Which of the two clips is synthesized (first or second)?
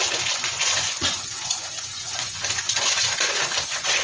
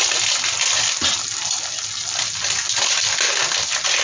first